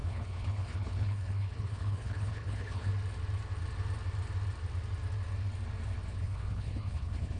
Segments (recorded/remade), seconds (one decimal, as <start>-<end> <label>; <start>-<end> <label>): 0.0-2.9 remade; 2.9-6.1 recorded; 6.1-7.4 remade